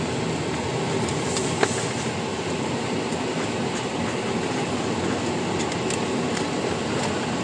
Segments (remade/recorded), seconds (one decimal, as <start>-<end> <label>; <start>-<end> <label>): 0.0-7.4 recorded